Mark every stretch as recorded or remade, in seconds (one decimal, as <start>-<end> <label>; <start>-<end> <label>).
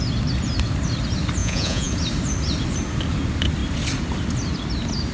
0.0-1.4 recorded; 1.4-1.9 remade; 1.9-5.1 recorded